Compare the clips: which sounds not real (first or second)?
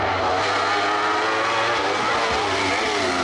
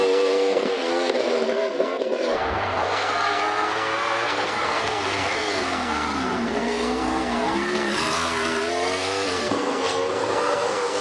second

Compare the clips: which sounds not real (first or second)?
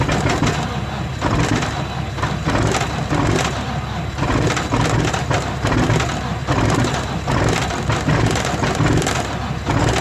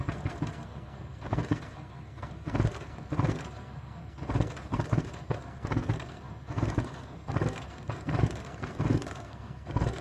second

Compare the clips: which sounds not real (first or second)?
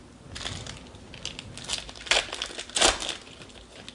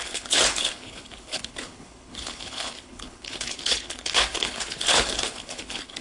second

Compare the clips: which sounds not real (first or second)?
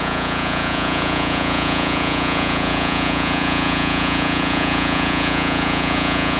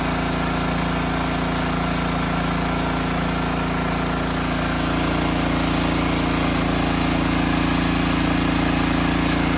first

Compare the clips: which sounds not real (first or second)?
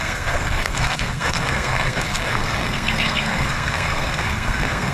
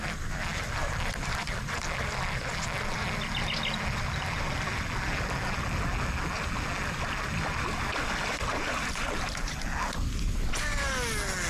first